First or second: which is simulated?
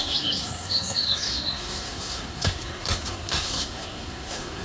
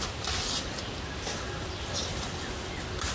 first